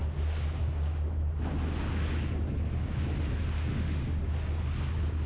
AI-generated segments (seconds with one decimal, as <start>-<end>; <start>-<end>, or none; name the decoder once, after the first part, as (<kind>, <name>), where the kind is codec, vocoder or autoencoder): 3.7-4.2 (autoencoder, DAC-VAE)